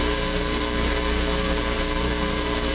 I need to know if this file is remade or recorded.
remade